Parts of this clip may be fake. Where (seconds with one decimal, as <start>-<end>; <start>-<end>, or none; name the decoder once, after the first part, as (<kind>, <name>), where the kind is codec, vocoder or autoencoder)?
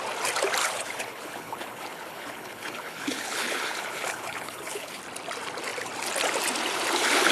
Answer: 0.6-5.0 (codec, HILCodec)